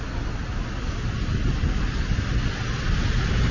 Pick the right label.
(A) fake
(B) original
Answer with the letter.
B